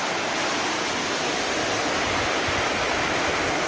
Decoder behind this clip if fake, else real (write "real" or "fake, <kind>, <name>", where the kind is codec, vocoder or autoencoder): real